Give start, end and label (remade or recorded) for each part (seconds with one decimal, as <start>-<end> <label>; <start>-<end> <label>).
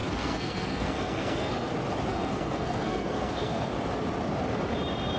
0.0-1.7 remade; 1.7-2.1 recorded; 2.1-3.7 remade; 3.7-5.2 recorded